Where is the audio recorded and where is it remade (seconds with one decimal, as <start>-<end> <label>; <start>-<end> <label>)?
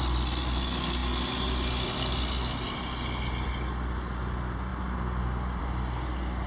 0.0-6.5 recorded